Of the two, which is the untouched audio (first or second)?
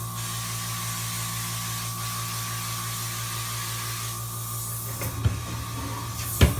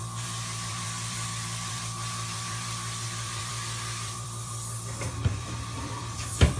first